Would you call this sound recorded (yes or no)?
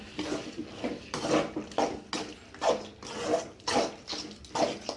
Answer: yes